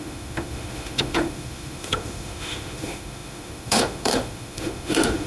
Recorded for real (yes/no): no